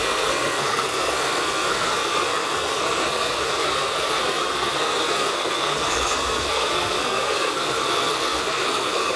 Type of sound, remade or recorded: remade